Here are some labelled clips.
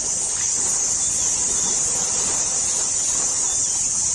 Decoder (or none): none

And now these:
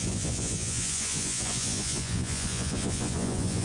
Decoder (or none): vocoder, Vocos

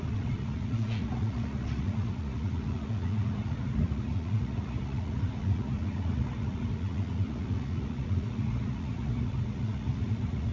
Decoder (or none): vocoder, Vocos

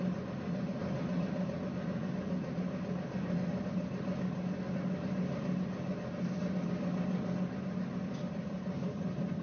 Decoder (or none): none